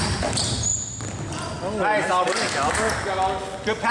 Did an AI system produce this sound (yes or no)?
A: no